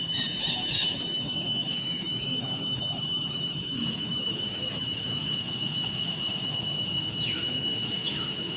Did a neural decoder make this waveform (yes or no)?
yes